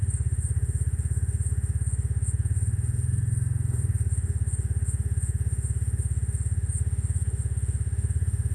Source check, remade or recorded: remade